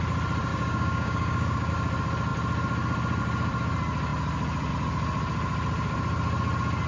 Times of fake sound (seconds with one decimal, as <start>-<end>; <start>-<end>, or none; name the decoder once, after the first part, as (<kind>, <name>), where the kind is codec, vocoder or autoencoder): 0.5-1.7 (codec, DAC)